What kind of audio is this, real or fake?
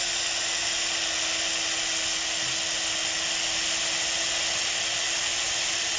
real